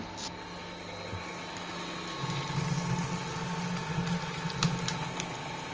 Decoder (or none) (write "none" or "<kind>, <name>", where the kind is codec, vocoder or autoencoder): none